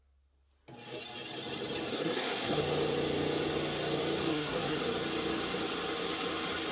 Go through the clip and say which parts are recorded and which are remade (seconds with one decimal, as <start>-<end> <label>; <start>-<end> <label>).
0.0-1.9 recorded; 1.9-2.6 remade; 2.6-4.3 recorded; 4.3-4.8 remade; 4.8-6.7 recorded